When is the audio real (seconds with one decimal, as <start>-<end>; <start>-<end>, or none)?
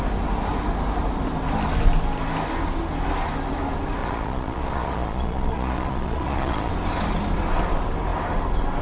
0.0-4.0; 6.7-8.8